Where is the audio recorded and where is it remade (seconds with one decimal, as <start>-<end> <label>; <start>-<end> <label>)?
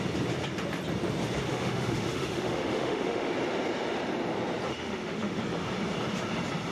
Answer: 0.0-1.5 recorded; 1.5-3.3 remade; 3.3-4.7 recorded; 4.7-5.4 remade; 5.4-6.7 recorded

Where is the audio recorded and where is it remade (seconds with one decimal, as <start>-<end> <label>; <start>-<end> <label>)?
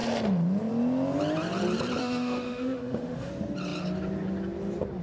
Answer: 0.0-2.0 recorded; 2.0-3.3 remade; 3.3-5.0 recorded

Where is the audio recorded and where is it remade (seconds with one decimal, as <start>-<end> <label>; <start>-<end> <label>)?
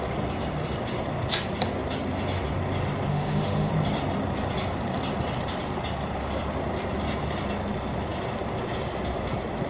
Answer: 0.0-3.1 recorded; 3.1-3.7 remade; 3.7-9.7 recorded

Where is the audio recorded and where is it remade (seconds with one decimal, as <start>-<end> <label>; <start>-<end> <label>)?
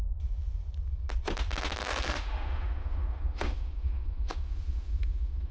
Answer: 0.0-1.9 recorded; 1.9-5.5 remade